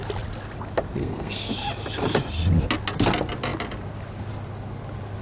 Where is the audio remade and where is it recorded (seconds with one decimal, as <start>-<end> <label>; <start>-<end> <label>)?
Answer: 0.0-1.0 recorded; 1.0-1.5 remade; 1.5-5.2 recorded